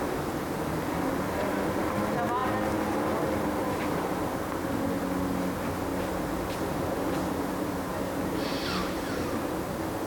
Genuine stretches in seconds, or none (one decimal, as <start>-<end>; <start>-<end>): 0.0-8.8; 9.7-10.1